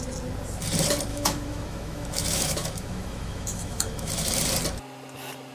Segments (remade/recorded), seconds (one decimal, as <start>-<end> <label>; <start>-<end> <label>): 0.0-1.1 recorded; 1.1-4.4 remade; 4.4-5.5 recorded